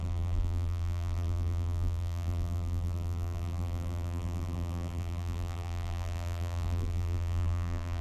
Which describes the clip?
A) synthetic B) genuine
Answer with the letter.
A